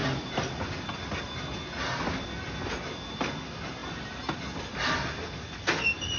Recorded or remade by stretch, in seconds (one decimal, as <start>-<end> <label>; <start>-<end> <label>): 0.0-6.2 recorded

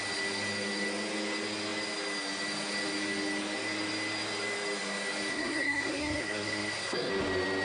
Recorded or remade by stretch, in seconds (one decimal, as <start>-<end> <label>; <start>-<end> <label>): 0.0-5.3 recorded; 5.3-7.1 remade; 7.1-7.6 recorded